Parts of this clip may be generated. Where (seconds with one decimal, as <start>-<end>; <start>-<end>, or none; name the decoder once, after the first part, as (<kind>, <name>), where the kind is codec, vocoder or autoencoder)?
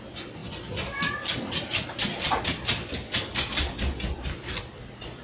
none